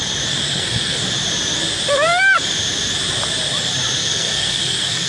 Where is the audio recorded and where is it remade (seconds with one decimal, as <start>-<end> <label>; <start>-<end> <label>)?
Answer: 0.0-0.4 recorded; 0.4-1.0 remade; 1.0-4.0 recorded; 4.0-5.1 remade